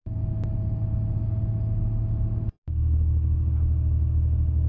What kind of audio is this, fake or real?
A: real